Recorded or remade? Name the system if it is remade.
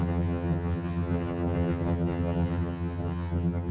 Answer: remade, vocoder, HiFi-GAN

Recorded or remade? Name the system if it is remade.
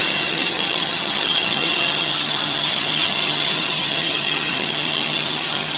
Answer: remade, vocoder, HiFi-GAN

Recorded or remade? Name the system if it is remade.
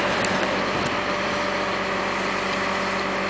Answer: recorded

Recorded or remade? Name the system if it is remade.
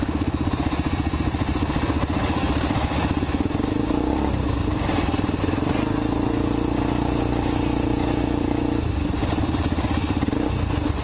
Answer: recorded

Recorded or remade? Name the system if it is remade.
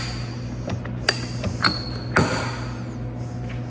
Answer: recorded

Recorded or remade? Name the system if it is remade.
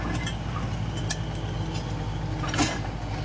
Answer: recorded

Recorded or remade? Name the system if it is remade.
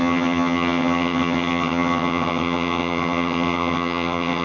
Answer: remade, vocoder, HiFi-GAN